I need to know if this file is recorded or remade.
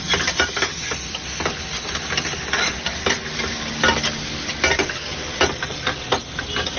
recorded